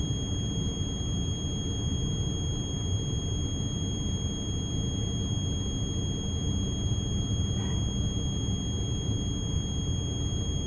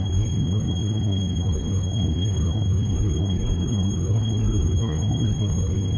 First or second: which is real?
first